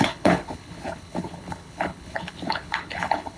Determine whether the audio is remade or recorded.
remade